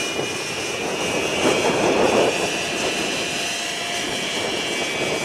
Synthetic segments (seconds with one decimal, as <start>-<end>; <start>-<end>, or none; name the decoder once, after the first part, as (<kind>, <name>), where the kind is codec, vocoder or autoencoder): 1.3-4.4 (vocoder, BigVGAN v2)